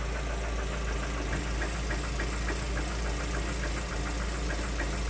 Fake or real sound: real